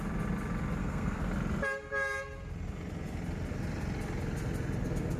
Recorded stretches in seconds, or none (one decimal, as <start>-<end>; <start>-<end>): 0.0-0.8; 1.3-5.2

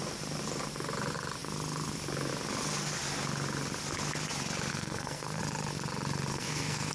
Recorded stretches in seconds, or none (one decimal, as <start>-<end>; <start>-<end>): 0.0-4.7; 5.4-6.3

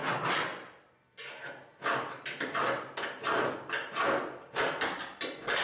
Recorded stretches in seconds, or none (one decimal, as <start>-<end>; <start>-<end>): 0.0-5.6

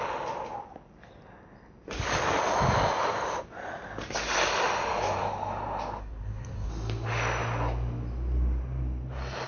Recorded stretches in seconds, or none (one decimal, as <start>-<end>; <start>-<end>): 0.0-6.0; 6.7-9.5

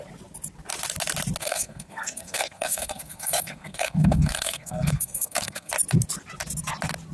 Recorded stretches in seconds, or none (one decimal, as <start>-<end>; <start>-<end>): 0.0-1.4; 5.7-7.1